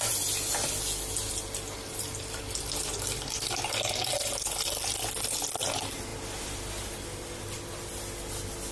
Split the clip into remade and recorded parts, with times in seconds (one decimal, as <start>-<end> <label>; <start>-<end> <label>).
0.0-8.7 recorded